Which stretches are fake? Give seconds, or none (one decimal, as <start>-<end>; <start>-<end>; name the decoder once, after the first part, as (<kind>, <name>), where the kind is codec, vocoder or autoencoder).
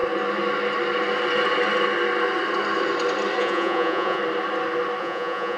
3.4-4.2 (vocoder, Vocos); 5.0-5.6